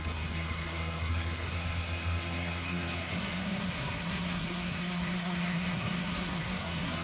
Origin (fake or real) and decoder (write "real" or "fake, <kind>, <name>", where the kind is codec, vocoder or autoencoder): fake, codec, SNAC